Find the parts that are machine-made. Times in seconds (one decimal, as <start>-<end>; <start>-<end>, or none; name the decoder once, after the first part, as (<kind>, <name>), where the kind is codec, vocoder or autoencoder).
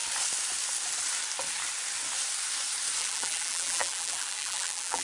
3.0-5.0 (vocoder, BigVGAN v2)